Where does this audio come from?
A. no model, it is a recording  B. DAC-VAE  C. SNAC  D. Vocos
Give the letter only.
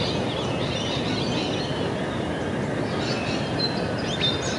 A